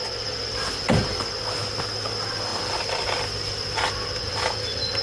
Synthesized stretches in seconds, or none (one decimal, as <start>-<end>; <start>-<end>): none